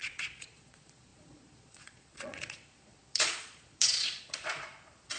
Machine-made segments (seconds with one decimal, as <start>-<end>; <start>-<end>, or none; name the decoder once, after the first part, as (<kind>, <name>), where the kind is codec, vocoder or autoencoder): 0.0-5.2 (vocoder, Vocos)